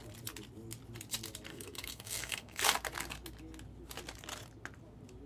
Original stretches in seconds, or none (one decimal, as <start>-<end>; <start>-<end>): 0.0-1.5; 2.6-5.3